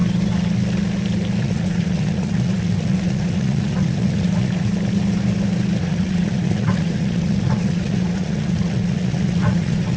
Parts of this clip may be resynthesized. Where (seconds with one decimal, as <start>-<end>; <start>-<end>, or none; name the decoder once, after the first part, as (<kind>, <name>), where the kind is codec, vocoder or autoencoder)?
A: 1.4-4.7 (vocoder, Vocos); 5.8-10.0